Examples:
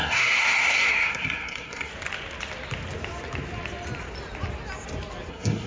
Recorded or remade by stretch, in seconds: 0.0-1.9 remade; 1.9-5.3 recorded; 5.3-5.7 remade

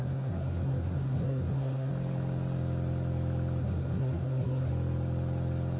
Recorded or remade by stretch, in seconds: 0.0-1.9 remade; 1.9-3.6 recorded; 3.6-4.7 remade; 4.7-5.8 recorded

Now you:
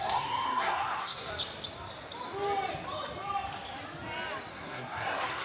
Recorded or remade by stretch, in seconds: 0.0-1.3 remade; 1.3-4.5 recorded; 4.5-5.4 remade

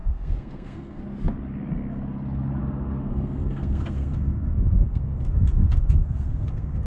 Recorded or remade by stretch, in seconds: 0.0-1.0 remade; 1.0-2.6 recorded; 2.6-6.9 remade

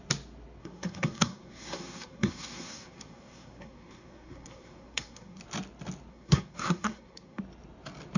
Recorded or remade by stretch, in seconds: 0.0-0.6 recorded; 0.6-5.4 remade; 5.4-6.1 recorded; 6.1-7.4 remade; 7.4-8.2 recorded

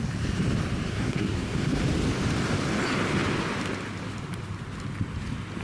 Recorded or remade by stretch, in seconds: 0.0-0.9 recorded; 0.9-1.8 remade; 1.8-5.6 recorded

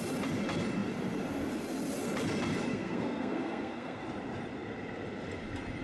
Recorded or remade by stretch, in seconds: 0.0-2.7 recorded; 2.7-4.0 remade; 4.0-5.8 recorded